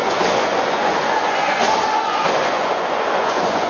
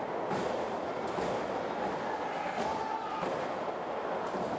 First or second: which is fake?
first